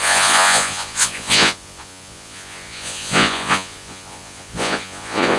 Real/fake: fake